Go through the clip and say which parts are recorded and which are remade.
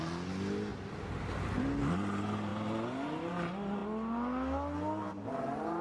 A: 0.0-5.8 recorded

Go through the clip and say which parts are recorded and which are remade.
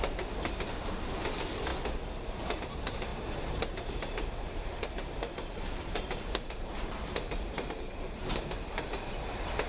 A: 0.0-3.1 recorded; 3.1-7.7 remade; 7.7-9.7 recorded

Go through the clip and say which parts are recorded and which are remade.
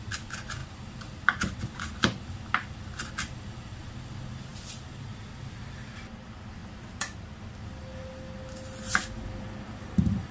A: 0.0-0.6 recorded; 0.6-2.8 remade; 2.8-4.5 recorded; 4.5-6.0 remade; 6.0-6.6 recorded; 6.6-7.6 remade; 7.6-10.3 recorded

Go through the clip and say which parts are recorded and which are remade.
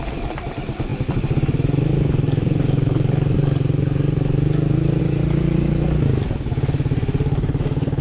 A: 0.0-8.0 recorded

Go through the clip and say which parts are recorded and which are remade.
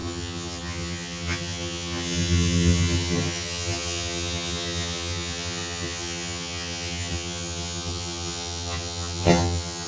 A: 0.0-9.9 remade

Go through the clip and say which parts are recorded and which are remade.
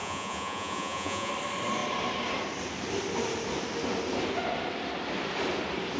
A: 0.0-1.3 remade; 1.3-6.0 recorded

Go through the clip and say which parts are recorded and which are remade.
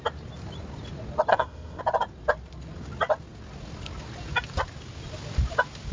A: 0.0-1.3 recorded; 1.3-1.8 remade; 1.8-5.9 recorded